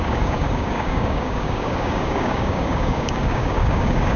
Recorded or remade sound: remade